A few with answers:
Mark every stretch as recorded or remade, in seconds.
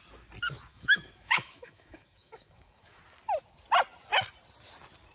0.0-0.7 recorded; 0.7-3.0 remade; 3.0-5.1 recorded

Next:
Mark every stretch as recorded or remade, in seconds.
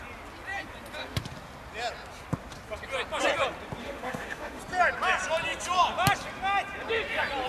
0.0-3.8 recorded; 3.8-4.6 remade; 4.6-7.5 recorded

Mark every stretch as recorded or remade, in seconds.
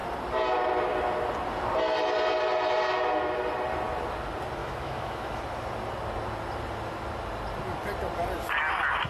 0.0-4.6 recorded; 4.6-5.4 remade; 5.4-9.1 recorded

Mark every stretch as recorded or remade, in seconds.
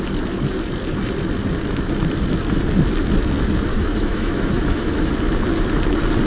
0.0-3.7 recorded; 3.7-5.1 remade; 5.1-6.3 recorded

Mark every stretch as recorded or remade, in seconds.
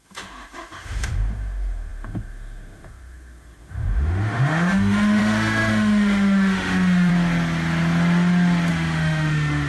0.0-7.1 remade; 7.1-8.7 recorded; 8.7-9.7 remade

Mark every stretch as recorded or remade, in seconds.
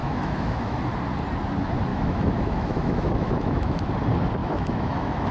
0.0-0.8 remade; 0.8-1.9 recorded; 1.9-3.9 remade; 3.9-4.4 recorded; 4.4-5.3 remade